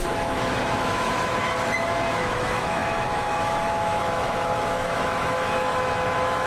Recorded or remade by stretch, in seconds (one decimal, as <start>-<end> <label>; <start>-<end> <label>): 0.0-1.3 remade; 1.3-2.1 recorded; 2.1-6.5 remade